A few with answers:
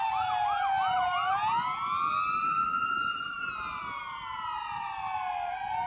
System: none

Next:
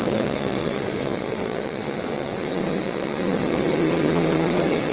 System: vocoder, WaveNeXt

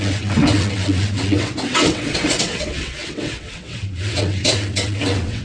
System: vocoder, WaveNeXt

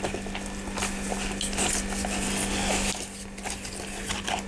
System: none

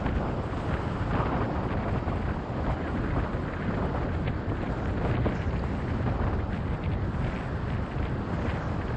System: none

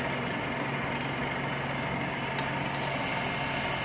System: none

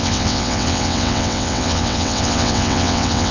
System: vocoder, WaveNeXt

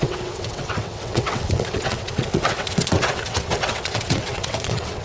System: vocoder, WaveNeXt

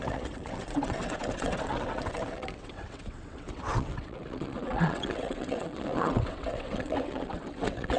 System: vocoder, WaveNeXt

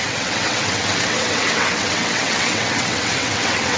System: vocoder, WaveNeXt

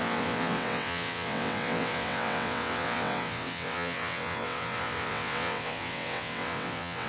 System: vocoder, WaveNeXt